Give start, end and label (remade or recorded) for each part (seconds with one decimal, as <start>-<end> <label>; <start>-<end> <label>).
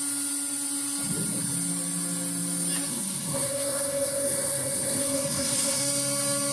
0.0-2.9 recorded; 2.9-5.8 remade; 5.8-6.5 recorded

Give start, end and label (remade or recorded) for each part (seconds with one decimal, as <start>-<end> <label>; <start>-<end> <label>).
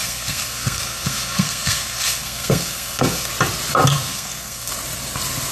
0.0-3.3 remade; 3.3-3.9 recorded; 3.9-4.7 remade; 4.7-5.5 recorded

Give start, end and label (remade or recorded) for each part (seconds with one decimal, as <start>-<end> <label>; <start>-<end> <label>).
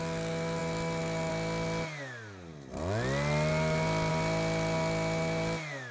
0.0-5.9 recorded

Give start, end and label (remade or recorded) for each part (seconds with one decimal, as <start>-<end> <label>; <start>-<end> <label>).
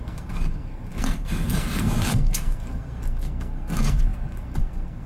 0.0-5.1 remade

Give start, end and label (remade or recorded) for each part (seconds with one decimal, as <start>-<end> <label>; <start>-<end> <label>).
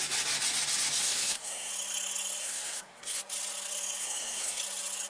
0.0-1.0 recorded; 1.0-1.7 remade; 1.7-2.4 recorded; 2.4-3.2 remade; 3.2-4.0 recorded; 4.0-4.6 remade; 4.6-5.1 recorded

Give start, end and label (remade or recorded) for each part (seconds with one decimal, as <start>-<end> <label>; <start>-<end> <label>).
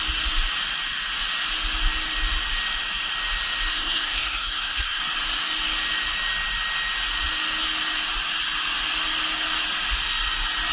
0.0-3.7 recorded; 3.7-5.0 remade; 5.0-10.7 recorded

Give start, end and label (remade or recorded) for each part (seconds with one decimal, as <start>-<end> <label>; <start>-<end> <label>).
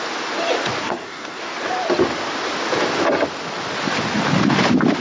0.0-0.8 recorded; 0.8-1.4 remade; 1.4-5.0 recorded